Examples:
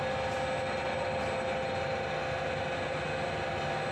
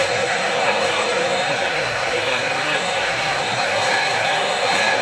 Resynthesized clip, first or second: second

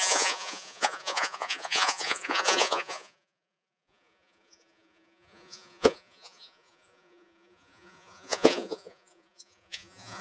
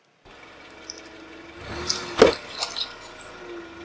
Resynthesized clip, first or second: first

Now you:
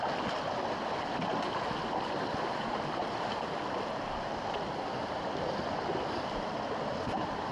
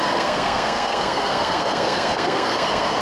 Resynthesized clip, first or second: second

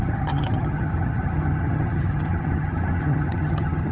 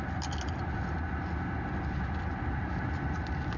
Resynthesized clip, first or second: first